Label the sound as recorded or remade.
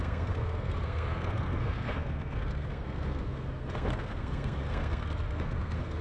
remade